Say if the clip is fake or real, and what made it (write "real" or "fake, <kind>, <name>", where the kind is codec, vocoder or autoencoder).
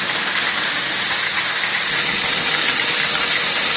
real